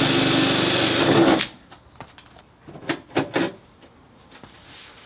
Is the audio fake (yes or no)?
no